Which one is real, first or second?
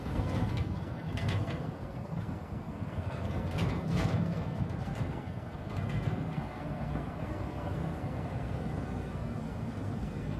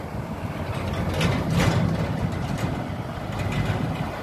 second